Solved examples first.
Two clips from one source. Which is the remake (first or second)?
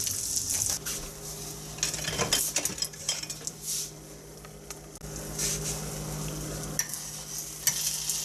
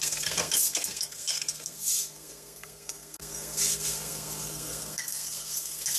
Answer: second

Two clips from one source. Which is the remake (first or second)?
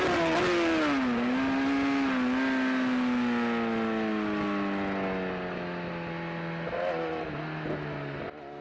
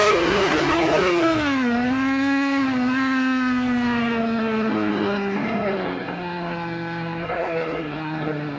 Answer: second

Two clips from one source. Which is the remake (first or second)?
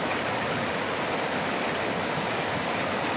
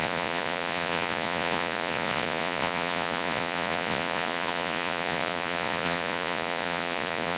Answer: second